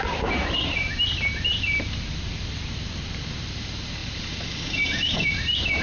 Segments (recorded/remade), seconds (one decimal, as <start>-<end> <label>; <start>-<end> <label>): 0.0-5.8 remade